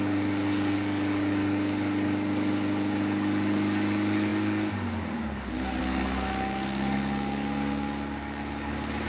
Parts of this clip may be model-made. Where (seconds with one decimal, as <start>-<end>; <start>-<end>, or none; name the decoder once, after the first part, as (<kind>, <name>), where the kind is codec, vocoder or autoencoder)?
0.0-9.1 (codec, DAC)